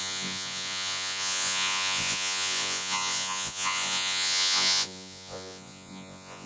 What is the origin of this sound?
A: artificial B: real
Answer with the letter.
A